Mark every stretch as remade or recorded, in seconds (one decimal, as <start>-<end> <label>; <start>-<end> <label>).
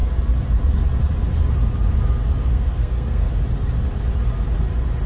0.0-2.4 recorded; 2.4-3.3 remade; 3.3-5.1 recorded